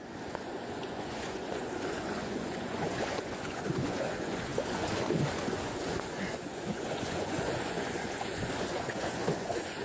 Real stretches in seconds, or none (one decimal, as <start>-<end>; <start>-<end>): none